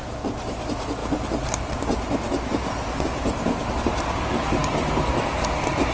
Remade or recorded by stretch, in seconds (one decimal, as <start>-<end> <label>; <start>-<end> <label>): 0.0-5.9 recorded